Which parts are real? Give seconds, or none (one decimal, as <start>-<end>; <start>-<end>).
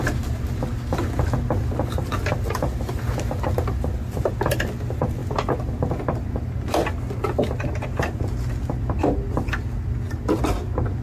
0.0-11.0